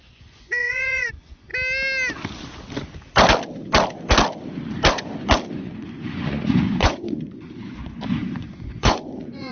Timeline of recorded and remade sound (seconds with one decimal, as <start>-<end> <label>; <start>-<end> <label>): 0.0-1.5 remade; 1.5-5.5 recorded; 5.5-9.5 remade